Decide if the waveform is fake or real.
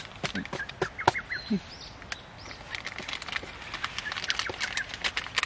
real